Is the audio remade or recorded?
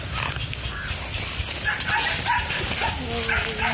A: recorded